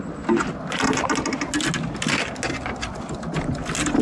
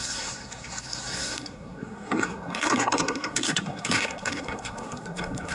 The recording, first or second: first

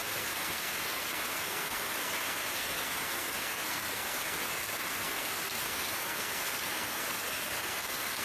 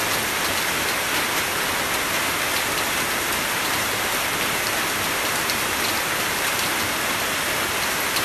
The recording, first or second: second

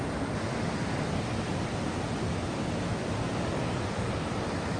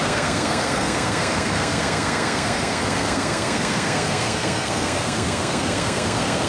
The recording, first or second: first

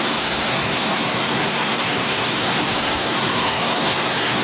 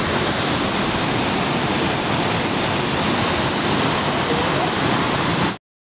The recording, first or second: second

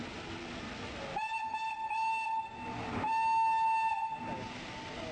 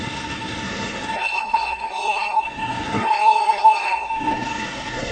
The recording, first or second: first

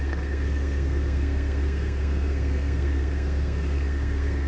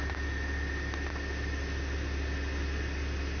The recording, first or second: second